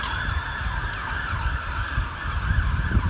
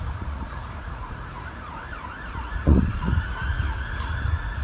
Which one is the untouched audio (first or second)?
first